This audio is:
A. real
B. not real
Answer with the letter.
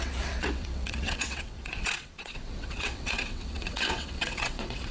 B